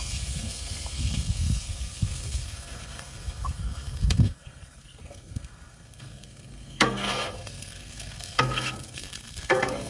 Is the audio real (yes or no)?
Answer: no